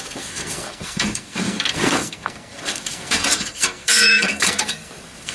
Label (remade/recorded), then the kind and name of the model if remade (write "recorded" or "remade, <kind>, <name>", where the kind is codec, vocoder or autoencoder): remade, codec, SNAC